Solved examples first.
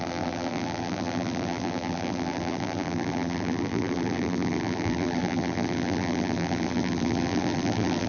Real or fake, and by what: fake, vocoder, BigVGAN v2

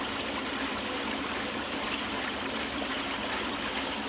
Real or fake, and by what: real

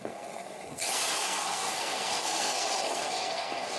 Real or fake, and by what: fake, codec, SNAC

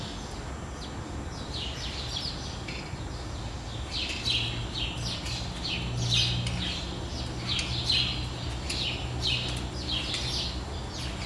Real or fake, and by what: real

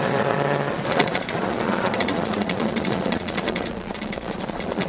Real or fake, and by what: fake, vocoder, Vocos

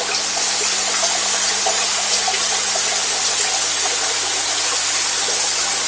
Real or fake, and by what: real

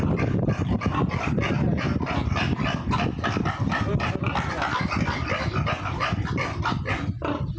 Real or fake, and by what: real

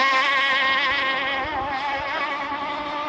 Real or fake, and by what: real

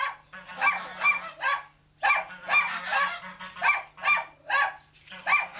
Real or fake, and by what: real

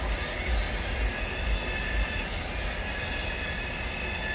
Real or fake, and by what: real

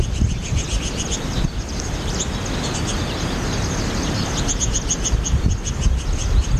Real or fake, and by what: real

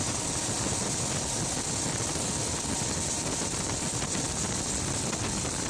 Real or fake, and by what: real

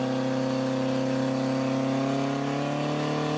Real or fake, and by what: real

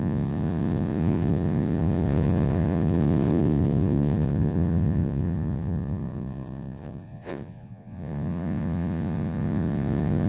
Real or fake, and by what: fake, vocoder, Vocos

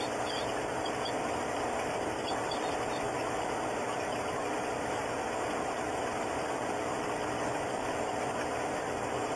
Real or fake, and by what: fake, vocoder, BigVGAN v2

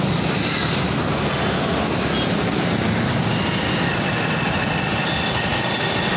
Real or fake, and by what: real